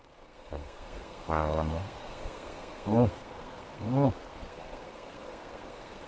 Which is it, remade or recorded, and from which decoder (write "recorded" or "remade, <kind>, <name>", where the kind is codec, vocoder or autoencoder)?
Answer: remade, codec, SNAC